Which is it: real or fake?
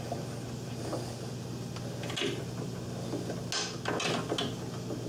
real